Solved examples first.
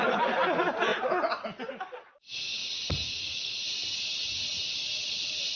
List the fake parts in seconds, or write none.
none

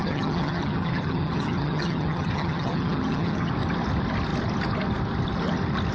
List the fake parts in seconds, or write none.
0.0-3.5 (vocoder, HiFi-GAN)

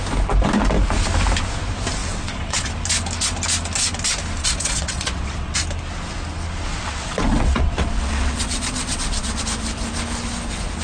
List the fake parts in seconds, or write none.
2.0-2.7 (vocoder, WaveNeXt); 4.4-5.6; 6.7-9.4

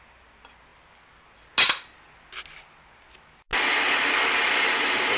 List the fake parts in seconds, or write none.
none